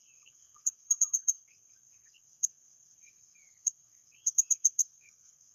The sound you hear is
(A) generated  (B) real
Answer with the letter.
A